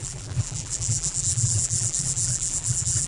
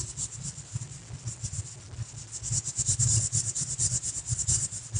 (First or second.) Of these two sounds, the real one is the second